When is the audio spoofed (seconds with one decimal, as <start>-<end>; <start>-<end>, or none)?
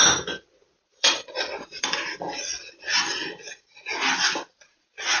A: 0.9-2.3